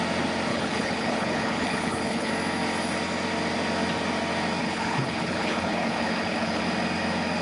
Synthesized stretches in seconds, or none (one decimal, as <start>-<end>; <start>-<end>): 0.5-2.3; 4.6-6.6